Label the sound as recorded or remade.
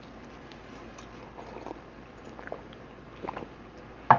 recorded